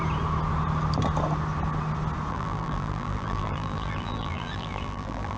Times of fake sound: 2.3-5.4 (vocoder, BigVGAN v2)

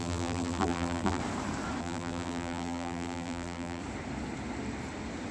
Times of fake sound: 0.0-1.2 (vocoder, BigVGAN v2); 1.8-3.8

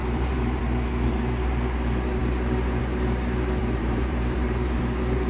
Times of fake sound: 0.0-0.6 (vocoder, BigVGAN v2); 3.6-4.8

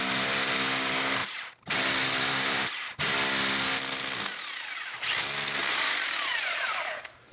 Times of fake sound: 1.2-2.7 (vocoder, BigVGAN v2); 5.6-7.3

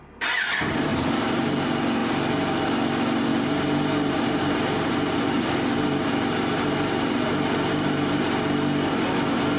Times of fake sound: 0.9-1.5 (vocoder, BigVGAN v2); 3.3-8.2